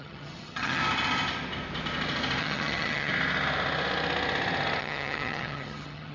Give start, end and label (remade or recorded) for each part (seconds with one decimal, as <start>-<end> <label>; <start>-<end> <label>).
0.0-0.8 remade; 0.8-2.4 recorded; 2.4-3.1 remade; 3.1-4.8 recorded; 4.8-6.1 remade